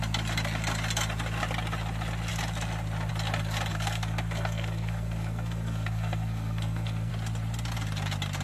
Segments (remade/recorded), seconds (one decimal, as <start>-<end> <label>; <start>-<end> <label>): 0.0-3.7 recorded; 3.7-7.1 remade; 7.1-8.4 recorded